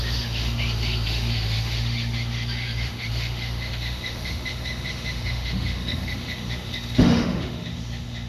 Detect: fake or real fake